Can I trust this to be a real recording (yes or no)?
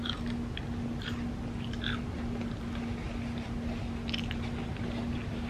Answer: yes